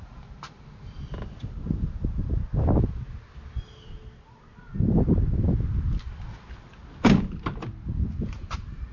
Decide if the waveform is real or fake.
real